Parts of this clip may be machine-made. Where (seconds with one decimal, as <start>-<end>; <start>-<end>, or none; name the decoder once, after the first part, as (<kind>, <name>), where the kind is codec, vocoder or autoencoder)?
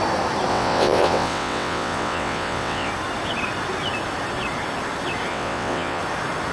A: 0.5-2.9 (vocoder, WaveNeXt); 5.3-6.0